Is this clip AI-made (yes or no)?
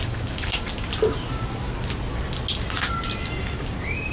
no